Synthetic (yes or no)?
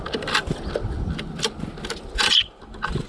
no